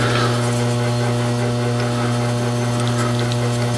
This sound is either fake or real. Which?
real